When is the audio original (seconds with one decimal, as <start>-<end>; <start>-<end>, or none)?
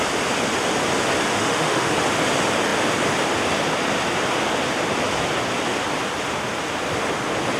0.0-1.3; 1.9-7.6